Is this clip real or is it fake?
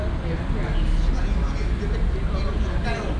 real